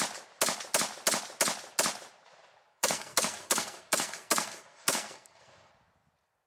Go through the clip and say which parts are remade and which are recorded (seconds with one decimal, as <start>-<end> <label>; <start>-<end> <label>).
0.0-2.7 recorded; 2.7-5.7 remade; 5.7-6.5 recorded